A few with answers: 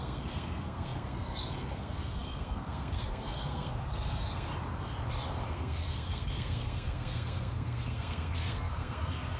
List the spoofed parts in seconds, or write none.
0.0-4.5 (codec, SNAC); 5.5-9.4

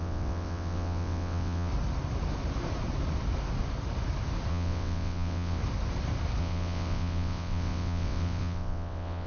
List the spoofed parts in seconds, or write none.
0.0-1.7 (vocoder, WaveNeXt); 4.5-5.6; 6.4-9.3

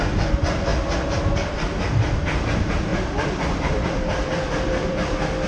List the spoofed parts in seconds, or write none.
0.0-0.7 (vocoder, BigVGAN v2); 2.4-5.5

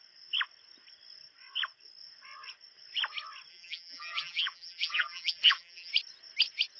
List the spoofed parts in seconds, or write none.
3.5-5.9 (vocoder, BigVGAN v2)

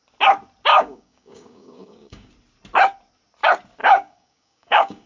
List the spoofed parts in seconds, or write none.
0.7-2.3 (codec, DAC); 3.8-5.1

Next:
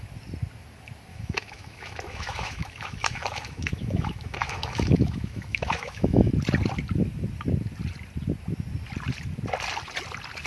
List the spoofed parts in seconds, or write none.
1.1-6.3 (autoencoder, DAC-VAE)